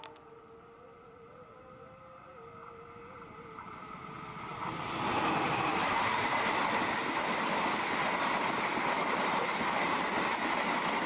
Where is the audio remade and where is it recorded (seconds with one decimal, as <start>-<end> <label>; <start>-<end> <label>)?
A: 0.0-11.1 recorded